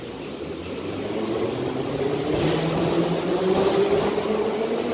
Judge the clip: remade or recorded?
recorded